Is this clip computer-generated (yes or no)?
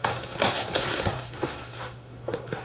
yes